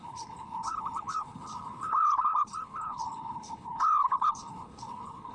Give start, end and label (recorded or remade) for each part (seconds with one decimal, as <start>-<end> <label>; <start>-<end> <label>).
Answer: 0.0-5.3 remade